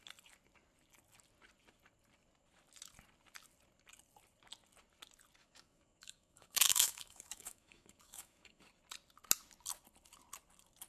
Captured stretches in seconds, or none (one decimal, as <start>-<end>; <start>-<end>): 0.0-5.4; 8.6-10.9